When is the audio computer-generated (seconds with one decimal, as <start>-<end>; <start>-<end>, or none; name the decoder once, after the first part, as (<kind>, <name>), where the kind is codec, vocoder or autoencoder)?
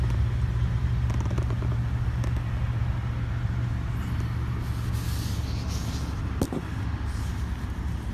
none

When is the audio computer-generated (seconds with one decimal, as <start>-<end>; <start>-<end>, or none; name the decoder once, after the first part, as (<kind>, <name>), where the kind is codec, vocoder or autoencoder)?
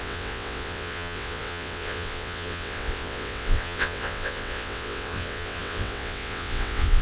0.0-7.0 (vocoder, WaveNeXt)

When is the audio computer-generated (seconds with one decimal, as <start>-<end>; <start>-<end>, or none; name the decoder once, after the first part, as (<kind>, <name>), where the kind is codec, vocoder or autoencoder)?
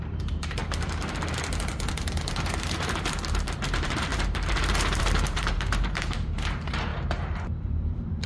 0.0-0.6 (vocoder, BigVGAN v2); 1.9-8.3